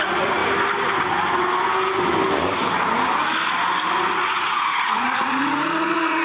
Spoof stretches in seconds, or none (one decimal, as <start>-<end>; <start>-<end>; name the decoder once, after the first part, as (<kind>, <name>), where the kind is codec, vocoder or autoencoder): 0.0-0.4 (vocoder, Vocos); 4.1-6.2